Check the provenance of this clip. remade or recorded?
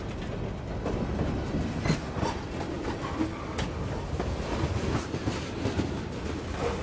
recorded